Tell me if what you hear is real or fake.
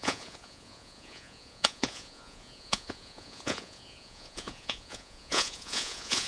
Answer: fake